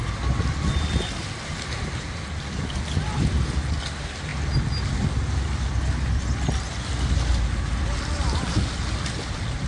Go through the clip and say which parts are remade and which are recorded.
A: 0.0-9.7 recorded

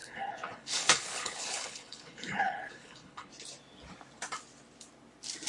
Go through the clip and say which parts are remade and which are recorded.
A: 0.0-3.3 remade; 3.3-5.5 recorded

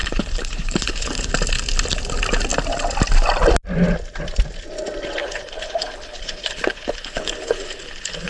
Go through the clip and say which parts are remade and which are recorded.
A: 0.0-1.3 remade; 1.3-5.2 recorded; 5.2-8.3 remade